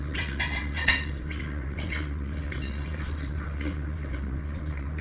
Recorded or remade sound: remade